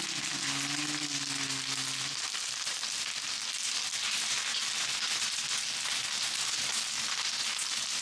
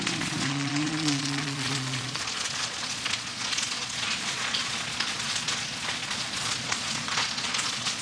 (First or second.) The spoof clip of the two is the second